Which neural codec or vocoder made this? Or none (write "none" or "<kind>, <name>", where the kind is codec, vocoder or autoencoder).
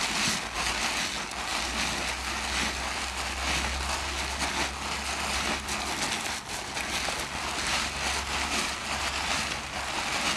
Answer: none